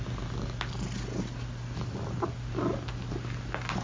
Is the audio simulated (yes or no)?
no